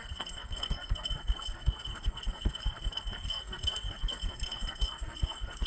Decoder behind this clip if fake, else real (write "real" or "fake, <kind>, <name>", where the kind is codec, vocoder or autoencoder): fake, codec, SNAC